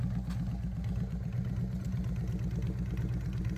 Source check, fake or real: real